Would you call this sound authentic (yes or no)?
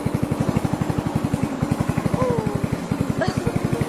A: yes